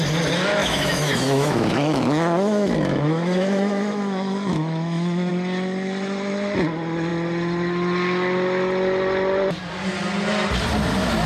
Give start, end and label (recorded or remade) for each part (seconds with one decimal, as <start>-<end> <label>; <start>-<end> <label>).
0.0-0.6 recorded; 0.6-5.3 remade; 5.3-11.3 recorded